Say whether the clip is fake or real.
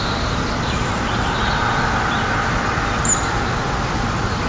real